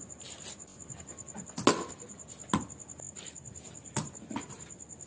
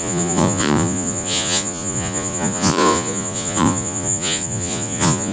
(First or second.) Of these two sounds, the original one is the first